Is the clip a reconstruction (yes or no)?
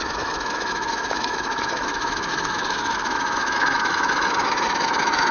yes